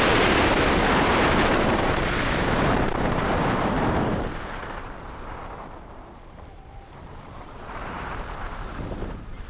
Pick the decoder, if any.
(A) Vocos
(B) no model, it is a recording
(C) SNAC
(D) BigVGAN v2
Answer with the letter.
D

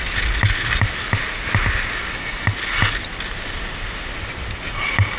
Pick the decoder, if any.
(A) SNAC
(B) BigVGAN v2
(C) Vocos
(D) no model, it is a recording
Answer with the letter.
D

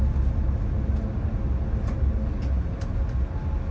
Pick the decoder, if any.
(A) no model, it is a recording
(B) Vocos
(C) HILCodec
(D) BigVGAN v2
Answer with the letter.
A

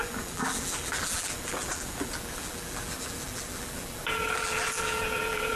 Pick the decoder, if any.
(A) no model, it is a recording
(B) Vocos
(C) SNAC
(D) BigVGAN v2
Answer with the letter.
D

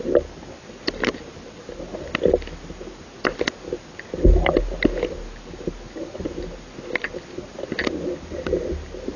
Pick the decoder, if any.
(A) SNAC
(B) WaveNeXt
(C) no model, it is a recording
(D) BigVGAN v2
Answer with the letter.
C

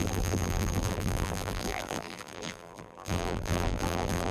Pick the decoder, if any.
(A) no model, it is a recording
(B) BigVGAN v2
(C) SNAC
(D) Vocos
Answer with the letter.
B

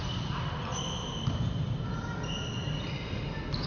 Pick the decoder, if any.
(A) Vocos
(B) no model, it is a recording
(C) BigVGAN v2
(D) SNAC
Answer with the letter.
B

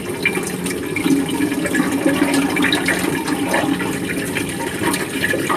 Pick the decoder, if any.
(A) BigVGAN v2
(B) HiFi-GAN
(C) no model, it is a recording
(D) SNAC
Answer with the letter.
C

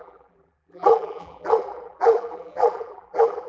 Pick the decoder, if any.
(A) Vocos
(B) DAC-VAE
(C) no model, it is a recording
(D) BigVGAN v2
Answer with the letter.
D